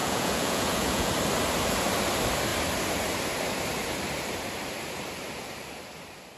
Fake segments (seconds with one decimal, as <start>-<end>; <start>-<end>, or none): 0.0-1.1